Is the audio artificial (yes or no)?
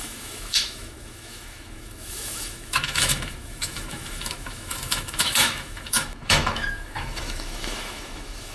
yes